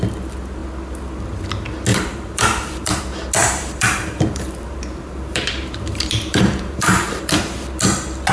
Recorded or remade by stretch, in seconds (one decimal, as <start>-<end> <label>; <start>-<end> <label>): 0.0-1.9 recorded; 1.9-3.0 remade; 3.0-3.4 recorded; 3.4-7.4 remade; 7.4-8.3 recorded